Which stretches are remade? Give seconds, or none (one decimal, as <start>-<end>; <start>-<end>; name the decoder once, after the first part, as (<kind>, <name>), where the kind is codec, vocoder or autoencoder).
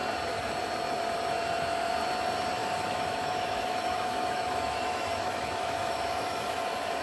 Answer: 2.6-6.6 (autoencoder, DAC-VAE)